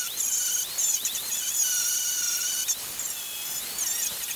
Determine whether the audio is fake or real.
real